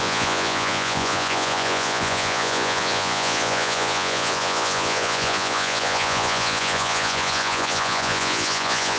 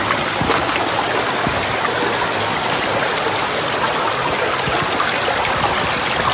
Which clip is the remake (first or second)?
first